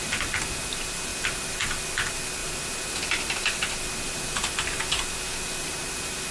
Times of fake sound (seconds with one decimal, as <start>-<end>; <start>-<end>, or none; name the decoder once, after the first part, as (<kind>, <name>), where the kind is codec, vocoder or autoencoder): none